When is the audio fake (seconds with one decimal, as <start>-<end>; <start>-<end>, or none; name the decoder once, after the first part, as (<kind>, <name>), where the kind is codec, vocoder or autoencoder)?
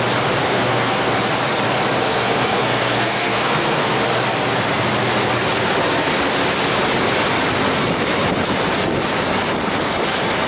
0.5-1.1 (codec, SNAC); 2.1-3.9